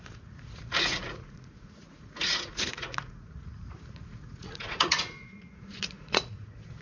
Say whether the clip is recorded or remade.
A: remade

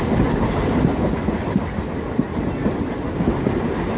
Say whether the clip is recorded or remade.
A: recorded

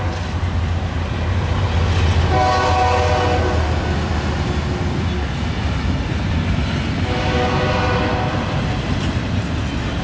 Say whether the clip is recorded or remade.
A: recorded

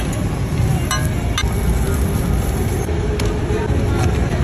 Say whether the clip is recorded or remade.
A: recorded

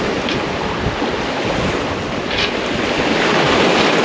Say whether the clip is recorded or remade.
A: recorded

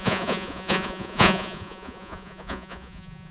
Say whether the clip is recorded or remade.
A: remade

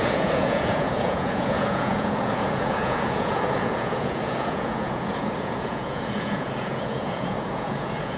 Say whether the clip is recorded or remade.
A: remade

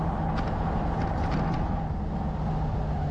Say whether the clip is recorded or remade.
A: recorded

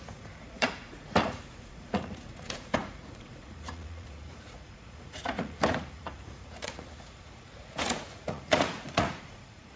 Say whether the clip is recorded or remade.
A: remade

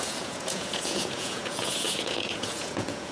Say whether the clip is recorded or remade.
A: remade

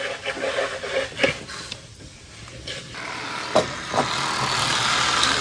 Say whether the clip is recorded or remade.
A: recorded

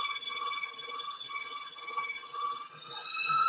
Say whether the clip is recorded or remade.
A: remade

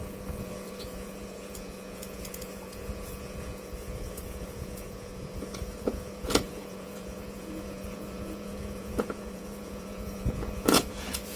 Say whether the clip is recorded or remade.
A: remade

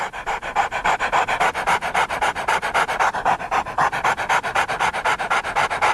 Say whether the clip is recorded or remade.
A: recorded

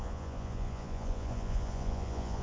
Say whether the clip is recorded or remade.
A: remade